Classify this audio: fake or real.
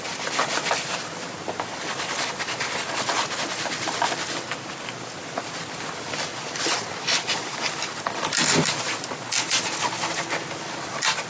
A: real